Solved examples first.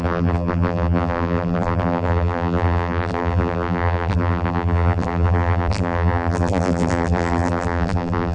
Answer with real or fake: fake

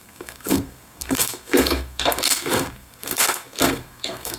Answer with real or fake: fake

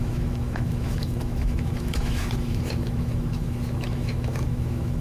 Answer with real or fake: fake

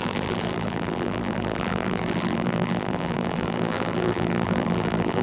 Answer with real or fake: fake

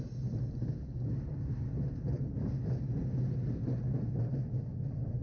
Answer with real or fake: real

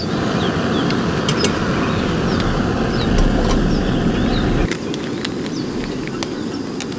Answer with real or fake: real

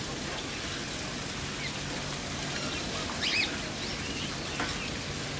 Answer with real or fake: real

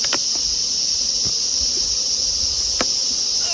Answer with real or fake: real